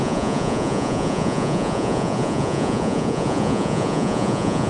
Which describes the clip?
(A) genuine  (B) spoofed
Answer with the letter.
B